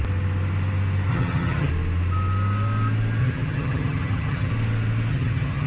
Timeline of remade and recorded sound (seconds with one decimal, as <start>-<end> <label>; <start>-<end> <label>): 0.0-1.1 recorded; 1.1-1.7 remade; 1.7-3.2 recorded; 3.2-4.5 remade; 4.5-5.1 recorded; 5.1-5.7 remade